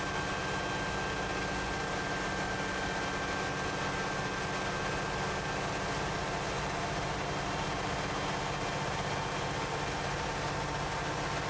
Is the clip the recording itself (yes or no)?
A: yes